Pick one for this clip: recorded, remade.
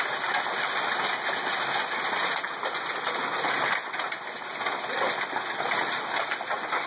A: recorded